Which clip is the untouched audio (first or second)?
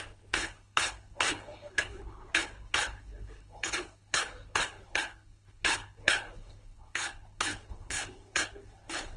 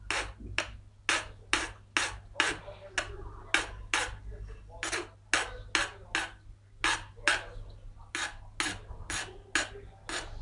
second